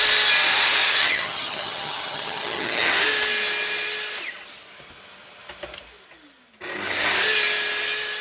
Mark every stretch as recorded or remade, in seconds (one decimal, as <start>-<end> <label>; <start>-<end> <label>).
0.0-1.0 recorded; 1.0-2.9 remade; 2.9-8.2 recorded